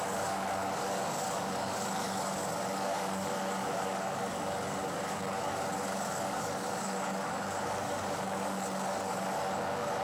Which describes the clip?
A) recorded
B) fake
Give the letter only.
B